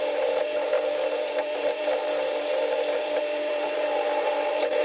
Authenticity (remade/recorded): remade